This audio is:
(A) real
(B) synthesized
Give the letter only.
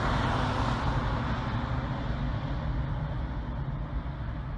A